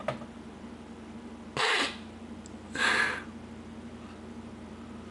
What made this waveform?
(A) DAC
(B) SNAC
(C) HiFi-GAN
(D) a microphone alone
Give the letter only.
D